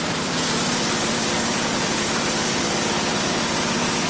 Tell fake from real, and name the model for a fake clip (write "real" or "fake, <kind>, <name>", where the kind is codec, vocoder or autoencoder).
fake, vocoder, BigVGAN v2